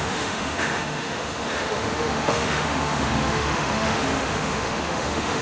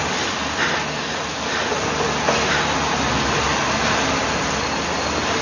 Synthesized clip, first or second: first